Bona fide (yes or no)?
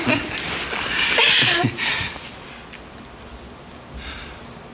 yes